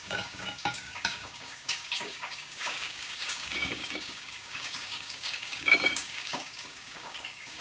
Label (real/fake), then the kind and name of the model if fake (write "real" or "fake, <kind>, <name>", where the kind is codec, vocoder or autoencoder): fake, codec, DAC